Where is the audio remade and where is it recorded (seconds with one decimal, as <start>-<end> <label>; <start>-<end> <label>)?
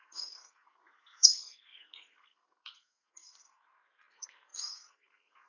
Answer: 0.0-5.5 remade